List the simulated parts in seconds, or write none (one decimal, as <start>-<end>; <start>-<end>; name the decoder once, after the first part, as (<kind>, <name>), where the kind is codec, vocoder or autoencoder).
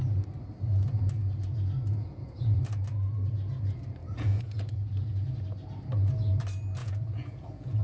1.9-2.6 (vocoder, Vocos); 4.0-4.9; 6.8-7.8